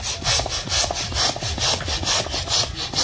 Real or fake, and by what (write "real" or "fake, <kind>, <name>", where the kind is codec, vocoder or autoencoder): real